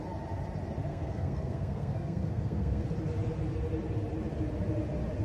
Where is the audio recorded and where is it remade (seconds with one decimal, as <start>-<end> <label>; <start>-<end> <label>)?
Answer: 0.0-0.9 recorded; 0.9-2.8 remade; 2.8-5.2 recorded